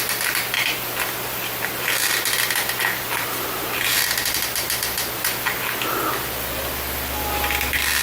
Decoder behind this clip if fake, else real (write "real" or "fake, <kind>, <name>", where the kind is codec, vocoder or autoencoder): fake, vocoder, BigVGAN v2